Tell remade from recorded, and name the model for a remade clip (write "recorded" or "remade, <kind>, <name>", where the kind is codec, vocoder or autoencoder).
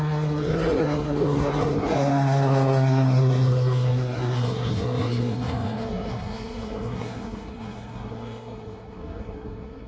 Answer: remade, codec, SNAC